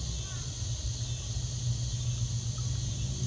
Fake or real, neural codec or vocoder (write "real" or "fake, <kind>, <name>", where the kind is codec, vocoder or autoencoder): real